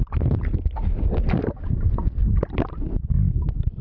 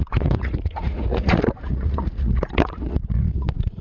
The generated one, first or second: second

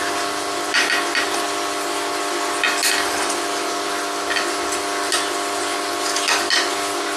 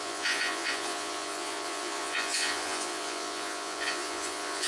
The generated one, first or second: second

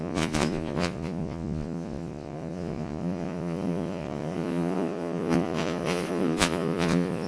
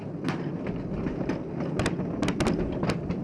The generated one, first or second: first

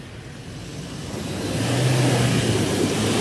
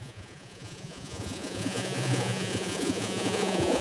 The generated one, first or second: second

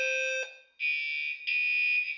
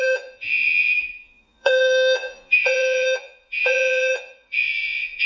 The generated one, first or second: second